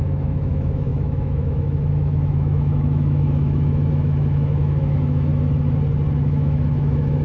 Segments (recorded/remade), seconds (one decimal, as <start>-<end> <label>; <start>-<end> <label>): 0.0-5.3 remade; 5.3-6.2 recorded; 6.2-7.2 remade